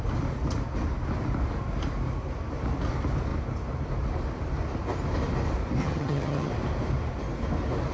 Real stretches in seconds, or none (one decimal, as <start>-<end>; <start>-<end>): 0.0-5.8; 6.5-7.9

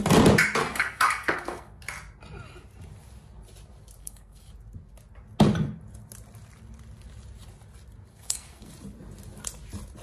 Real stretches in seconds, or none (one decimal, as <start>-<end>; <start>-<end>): 0.0-0.6; 1.8-4.0; 4.5-8.1; 8.7-10.0

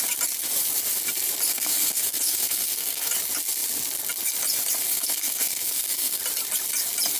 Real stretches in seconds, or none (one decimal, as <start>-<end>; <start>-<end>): 0.0-1.5; 3.1-4.9; 6.2-7.2